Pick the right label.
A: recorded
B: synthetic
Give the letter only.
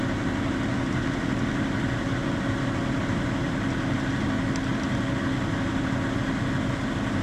A